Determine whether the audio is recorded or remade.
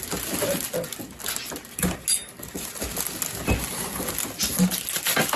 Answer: recorded